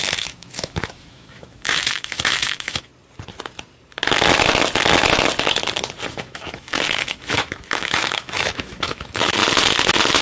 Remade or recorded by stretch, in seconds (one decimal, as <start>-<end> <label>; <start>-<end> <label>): 0.0-2.9 remade; 2.9-6.1 recorded; 6.1-9.4 remade; 9.4-10.2 recorded